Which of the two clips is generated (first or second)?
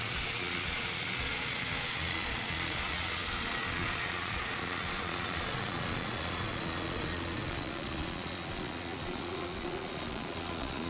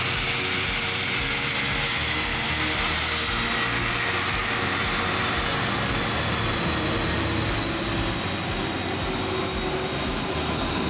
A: first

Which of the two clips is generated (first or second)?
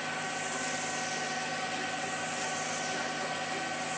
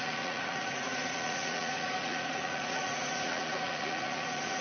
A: second